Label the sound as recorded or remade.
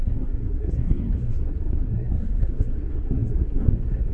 remade